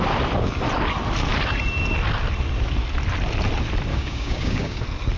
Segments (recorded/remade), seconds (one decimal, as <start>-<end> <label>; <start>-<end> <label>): 0.0-3.9 recorded; 3.9-4.8 remade; 4.8-5.2 recorded